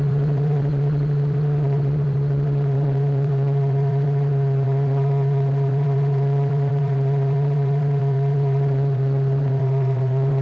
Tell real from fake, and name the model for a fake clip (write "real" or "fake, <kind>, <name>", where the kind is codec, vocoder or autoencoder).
fake, vocoder, WaveNeXt